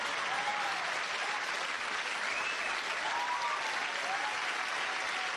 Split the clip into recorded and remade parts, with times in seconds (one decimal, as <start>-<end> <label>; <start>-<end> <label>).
0.0-5.4 recorded